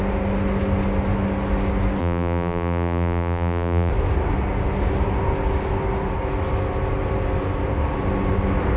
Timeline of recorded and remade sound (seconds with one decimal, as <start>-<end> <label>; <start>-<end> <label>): 0.0-2.0 recorded; 2.0-3.9 remade; 3.9-8.8 recorded